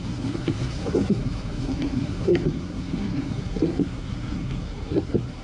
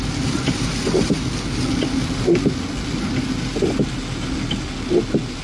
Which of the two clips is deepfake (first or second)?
first